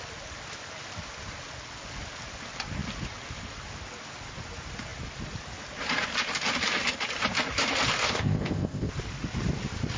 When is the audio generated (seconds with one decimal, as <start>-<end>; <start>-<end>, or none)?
8.0-8.9